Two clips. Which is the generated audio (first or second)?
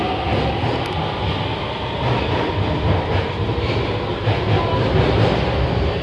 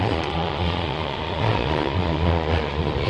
second